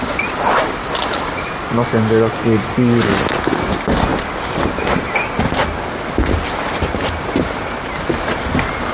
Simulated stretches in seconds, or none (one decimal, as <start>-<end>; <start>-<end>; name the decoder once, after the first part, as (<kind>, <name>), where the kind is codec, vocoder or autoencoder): none